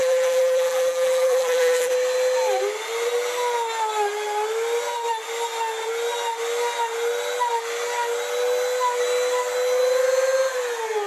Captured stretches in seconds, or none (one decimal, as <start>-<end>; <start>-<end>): 1.9-11.1

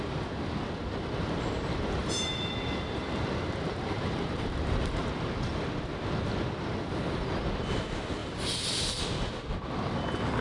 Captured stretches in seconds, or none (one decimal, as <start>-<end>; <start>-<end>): 0.0-2.0; 5.0-8.2; 9.0-10.4